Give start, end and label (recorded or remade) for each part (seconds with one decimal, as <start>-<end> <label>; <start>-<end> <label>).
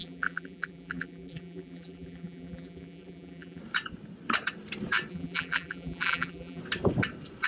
0.0-3.6 remade; 3.6-5.1 recorded; 5.1-6.6 remade; 6.6-7.5 recorded